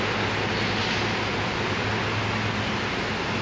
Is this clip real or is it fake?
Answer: real